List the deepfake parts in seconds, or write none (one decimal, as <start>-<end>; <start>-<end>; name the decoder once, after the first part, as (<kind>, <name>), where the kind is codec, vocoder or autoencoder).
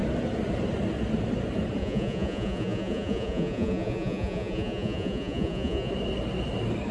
1.8-5.9 (vocoder, Vocos)